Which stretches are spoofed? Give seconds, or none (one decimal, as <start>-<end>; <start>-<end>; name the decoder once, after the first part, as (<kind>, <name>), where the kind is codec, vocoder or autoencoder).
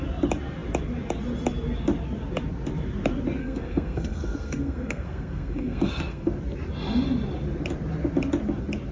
3.4-6.3 (codec, SNAC)